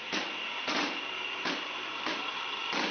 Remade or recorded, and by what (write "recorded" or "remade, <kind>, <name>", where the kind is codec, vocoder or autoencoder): remade, vocoder, BigVGAN v2